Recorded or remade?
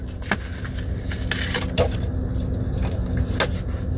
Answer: recorded